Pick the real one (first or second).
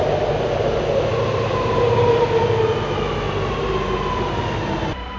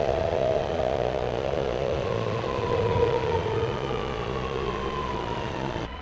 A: first